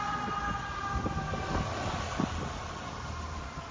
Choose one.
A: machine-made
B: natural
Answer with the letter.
B